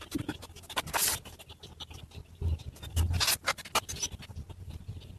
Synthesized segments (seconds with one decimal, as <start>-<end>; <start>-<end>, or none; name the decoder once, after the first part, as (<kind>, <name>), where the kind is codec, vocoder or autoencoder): none